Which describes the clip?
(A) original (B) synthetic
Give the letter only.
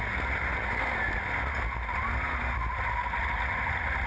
A